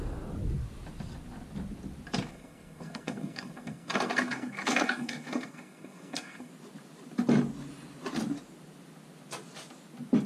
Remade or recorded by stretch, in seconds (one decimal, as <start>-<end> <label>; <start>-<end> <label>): 0.0-2.3 recorded; 2.3-6.5 remade; 6.5-10.3 recorded